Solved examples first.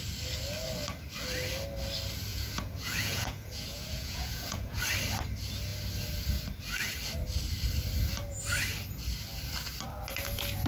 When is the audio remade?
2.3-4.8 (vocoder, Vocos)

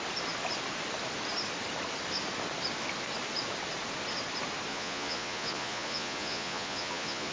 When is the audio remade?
4.7-7.3 (vocoder, Vocos)

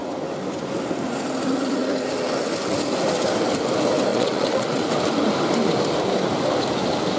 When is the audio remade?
4.1-4.9 (vocoder, Vocos)

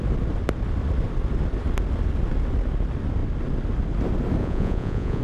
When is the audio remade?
4.4-5.2 (vocoder, Vocos)